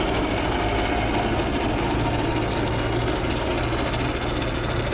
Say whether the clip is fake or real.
real